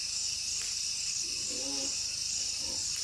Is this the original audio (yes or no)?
yes